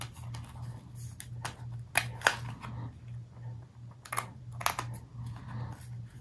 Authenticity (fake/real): real